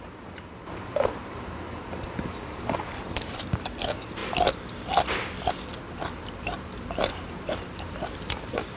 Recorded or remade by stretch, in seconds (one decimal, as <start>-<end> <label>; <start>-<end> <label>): 0.0-4.2 remade; 4.2-6.2 recorded; 6.2-8.8 remade